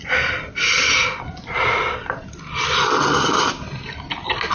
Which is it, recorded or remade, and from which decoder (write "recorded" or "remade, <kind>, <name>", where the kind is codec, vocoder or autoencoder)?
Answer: recorded